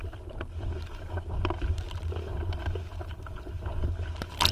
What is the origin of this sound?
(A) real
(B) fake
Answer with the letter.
A